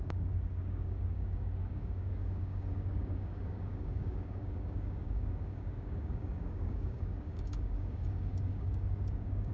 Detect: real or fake fake